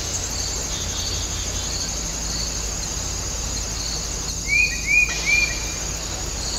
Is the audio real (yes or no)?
yes